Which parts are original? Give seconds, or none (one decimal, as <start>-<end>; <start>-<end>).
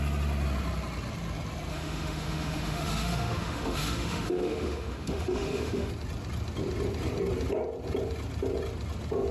0.0-1.7; 5.9-9.3